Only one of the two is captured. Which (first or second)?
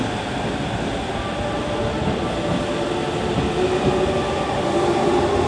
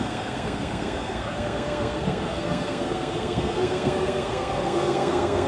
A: first